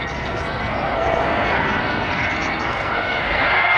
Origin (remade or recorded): remade